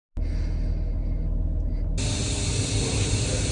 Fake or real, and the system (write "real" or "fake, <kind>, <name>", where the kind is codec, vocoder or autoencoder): real